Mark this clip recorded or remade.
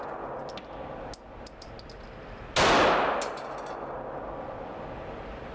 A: recorded